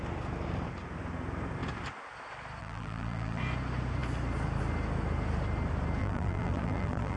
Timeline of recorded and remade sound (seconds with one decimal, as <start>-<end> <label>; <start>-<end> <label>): 0.0-2.6 recorded; 2.6-3.4 remade; 3.4-6.0 recorded; 6.0-7.2 remade